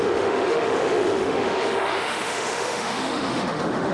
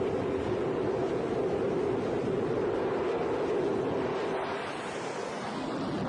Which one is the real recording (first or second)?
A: second